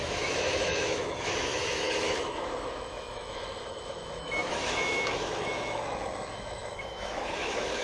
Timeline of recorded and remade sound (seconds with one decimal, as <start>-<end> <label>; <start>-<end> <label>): 0.0-7.8 remade